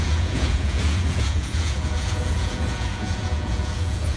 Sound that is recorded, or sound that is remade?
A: remade